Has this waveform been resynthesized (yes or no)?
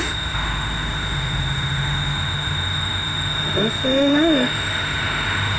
yes